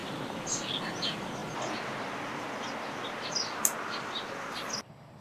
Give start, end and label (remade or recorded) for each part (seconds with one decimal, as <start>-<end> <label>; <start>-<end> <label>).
0.0-5.2 recorded